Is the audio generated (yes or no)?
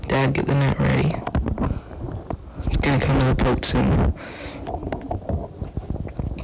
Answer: no